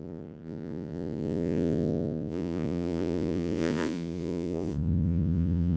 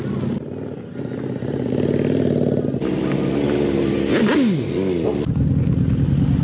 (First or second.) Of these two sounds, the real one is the second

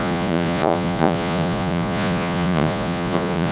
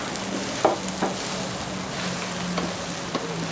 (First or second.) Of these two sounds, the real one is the second